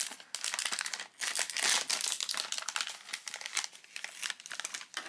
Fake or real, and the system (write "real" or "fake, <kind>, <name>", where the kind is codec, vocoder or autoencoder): real